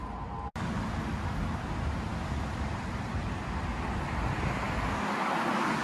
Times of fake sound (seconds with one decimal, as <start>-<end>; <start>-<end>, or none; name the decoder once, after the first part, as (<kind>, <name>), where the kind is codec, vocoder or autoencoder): none